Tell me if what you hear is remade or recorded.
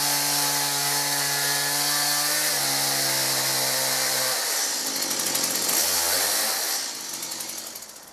recorded